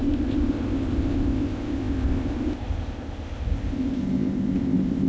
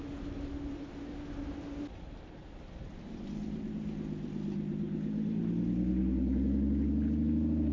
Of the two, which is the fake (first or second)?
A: first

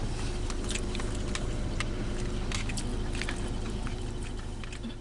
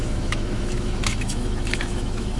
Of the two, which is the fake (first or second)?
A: second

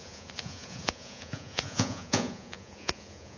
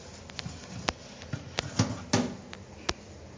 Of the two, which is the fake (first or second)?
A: first